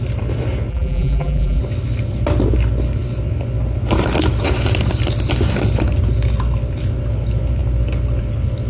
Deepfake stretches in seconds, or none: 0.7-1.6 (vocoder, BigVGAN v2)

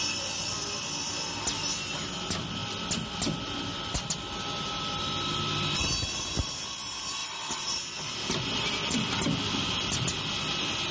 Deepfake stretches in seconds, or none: 7.2-8.3 (vocoder, BigVGAN v2); 8.8-9.6

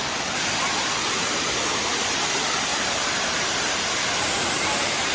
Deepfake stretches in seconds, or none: 2.7-3.8 (vocoder, BigVGAN v2)

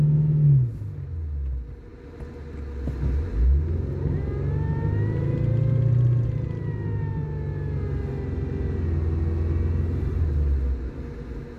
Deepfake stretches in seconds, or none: none

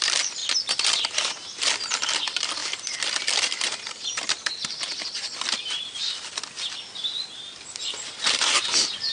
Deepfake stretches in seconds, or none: 0.0-0.4 (vocoder, BigVGAN v2); 2.2-9.1

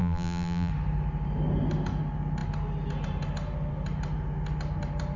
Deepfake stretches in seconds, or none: 0.0-0.7 (vocoder, BigVGAN v2)

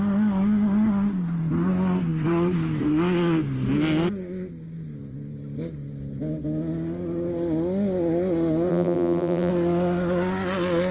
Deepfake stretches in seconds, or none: 8.7-9.5 (vocoder, BigVGAN v2)

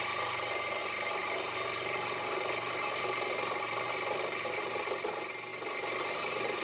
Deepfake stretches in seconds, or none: 0.0-5.5 (vocoder, BigVGAN v2); 6.1-6.6